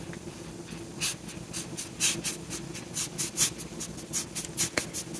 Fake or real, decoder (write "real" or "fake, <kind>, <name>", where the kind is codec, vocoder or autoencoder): real